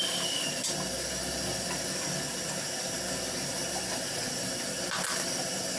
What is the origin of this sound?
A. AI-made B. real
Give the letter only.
B